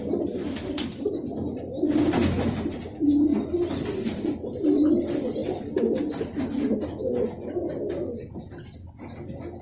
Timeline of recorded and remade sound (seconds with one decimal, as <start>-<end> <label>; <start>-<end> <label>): 0.0-9.6 recorded